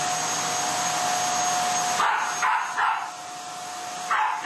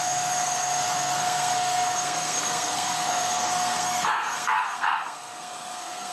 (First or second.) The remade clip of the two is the second